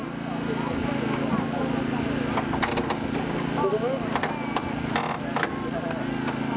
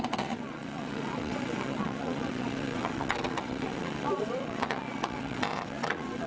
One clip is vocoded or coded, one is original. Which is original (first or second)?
first